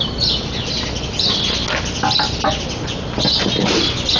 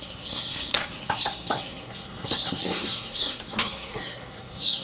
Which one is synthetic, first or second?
second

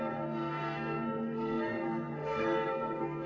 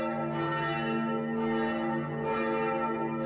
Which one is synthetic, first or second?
first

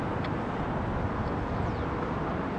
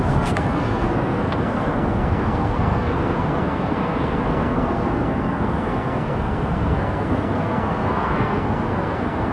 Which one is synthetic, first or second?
second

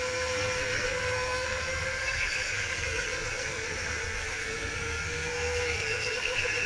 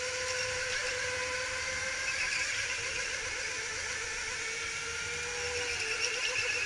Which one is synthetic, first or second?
first